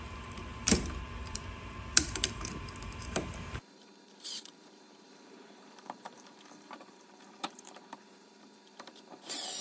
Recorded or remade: remade